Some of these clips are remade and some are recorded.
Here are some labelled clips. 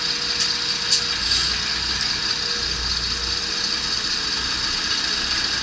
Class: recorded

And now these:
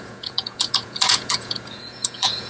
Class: remade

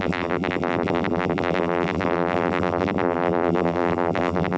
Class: remade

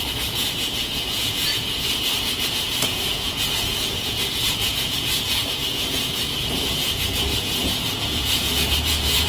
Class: remade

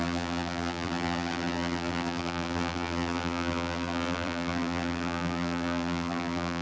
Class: remade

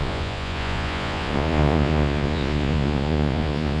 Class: remade